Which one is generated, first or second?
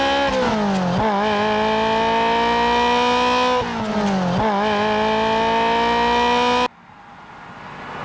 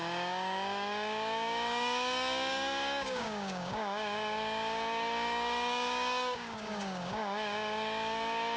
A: second